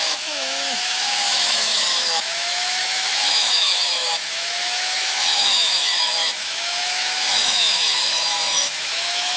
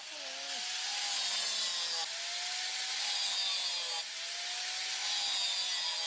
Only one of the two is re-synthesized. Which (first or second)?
first